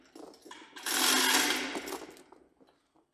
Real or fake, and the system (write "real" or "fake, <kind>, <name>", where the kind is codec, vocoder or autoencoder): real